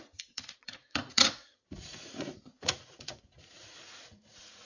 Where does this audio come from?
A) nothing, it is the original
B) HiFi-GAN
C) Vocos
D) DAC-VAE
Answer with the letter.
C